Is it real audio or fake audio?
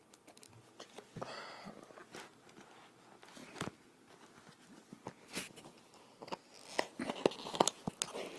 real